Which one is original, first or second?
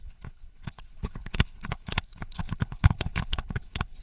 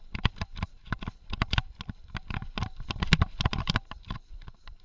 second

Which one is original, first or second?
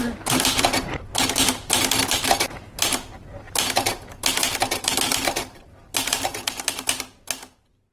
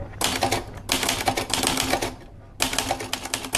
second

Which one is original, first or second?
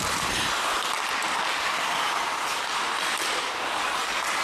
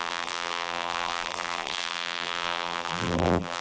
first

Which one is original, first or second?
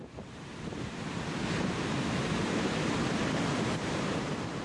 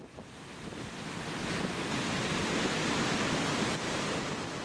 second